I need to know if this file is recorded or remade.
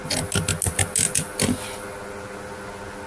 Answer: recorded